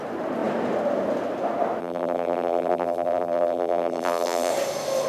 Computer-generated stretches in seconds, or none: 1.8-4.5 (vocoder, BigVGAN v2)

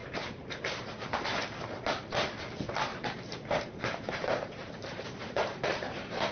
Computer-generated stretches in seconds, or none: 0.0-0.8 (vocoder, BigVGAN v2); 2.9-6.3

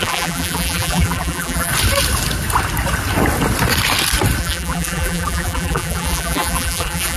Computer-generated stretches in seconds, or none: 0.0-1.7 (vocoder, BigVGAN v2); 4.4-7.2

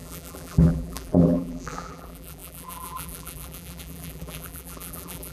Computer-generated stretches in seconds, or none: 0.0-5.3 (vocoder, BigVGAN v2)

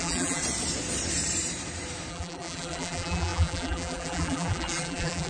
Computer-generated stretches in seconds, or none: 0.0-0.4 (vocoder, BigVGAN v2); 2.1-5.3

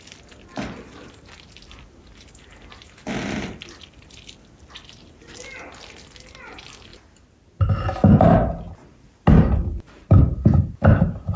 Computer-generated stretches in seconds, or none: none

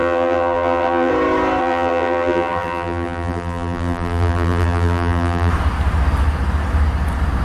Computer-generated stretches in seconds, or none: 0.0-1.1 (vocoder, BigVGAN v2); 1.6-5.5

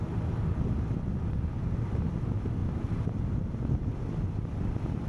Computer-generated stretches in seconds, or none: none